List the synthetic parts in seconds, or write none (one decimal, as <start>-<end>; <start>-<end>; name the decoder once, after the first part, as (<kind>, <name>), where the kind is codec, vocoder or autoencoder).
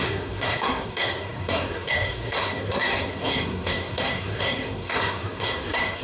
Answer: 0.0-6.0 (codec, SNAC)